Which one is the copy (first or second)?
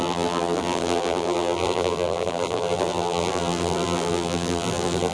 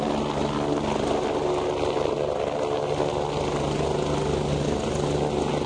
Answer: first